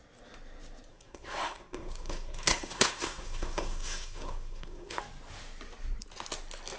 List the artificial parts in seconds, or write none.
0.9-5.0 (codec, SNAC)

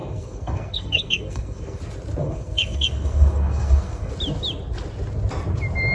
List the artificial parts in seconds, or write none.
0.0-1.8 (codec, SNAC); 2.2-4.1

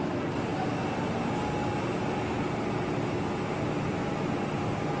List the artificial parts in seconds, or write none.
none

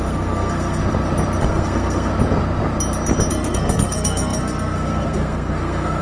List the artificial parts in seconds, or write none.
0.0-0.8 (codec, SNAC); 1.4-2.1; 3.3-6.0